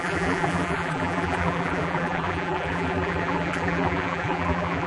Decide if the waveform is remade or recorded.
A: remade